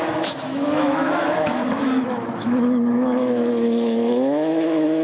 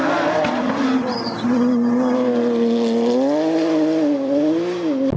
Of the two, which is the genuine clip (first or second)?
second